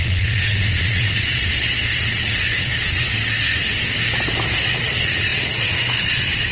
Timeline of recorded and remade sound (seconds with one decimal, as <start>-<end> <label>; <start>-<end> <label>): 0.0-3.1 remade; 3.1-4.7 recorded; 4.7-6.5 remade